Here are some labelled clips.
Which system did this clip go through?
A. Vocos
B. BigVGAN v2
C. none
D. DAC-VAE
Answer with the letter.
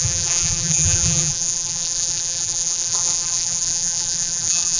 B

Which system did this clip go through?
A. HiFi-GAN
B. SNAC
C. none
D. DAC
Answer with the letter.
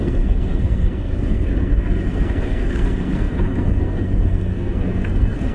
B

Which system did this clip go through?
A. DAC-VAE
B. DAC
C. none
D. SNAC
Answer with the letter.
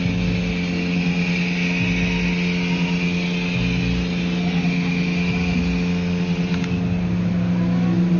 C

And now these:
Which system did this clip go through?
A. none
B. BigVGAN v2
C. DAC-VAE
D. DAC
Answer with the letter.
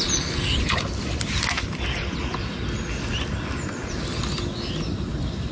A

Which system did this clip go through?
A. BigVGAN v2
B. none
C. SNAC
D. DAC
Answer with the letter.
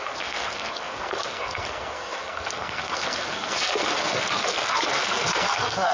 C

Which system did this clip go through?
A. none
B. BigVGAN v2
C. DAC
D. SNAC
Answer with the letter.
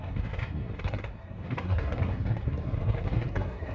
D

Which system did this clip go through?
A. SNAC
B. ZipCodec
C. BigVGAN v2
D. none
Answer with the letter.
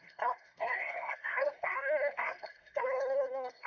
A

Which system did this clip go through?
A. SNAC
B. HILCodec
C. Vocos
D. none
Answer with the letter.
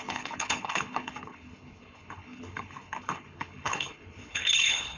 B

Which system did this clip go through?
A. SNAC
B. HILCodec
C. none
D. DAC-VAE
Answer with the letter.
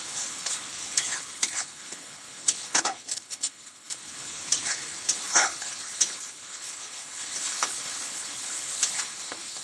B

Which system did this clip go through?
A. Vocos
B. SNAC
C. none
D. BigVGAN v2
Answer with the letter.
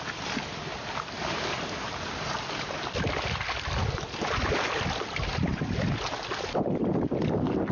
D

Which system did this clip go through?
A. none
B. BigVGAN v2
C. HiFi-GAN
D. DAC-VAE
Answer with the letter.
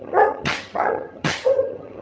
C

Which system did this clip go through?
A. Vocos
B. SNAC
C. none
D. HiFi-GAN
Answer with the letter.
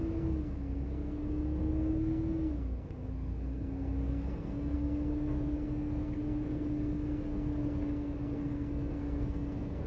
B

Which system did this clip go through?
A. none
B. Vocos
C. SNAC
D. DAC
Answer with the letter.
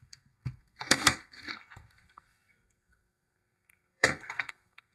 C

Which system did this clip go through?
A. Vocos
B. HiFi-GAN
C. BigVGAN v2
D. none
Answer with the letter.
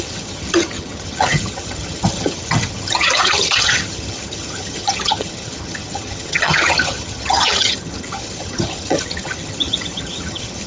B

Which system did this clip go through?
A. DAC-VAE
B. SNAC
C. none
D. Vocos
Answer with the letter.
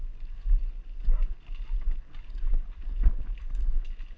C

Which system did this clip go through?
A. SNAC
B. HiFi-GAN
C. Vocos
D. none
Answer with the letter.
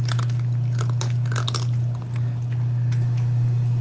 D